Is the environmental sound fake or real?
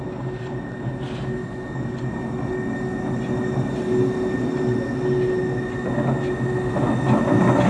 real